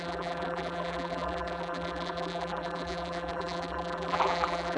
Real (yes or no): no